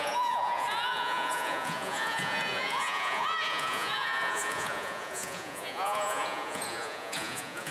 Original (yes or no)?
no